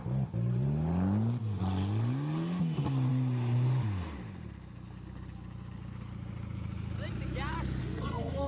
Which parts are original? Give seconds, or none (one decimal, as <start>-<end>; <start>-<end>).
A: 0.0-7.8